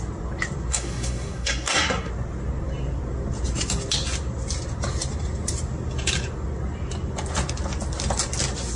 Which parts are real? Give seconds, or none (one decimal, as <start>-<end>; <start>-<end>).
0.0-0.7; 2.1-8.8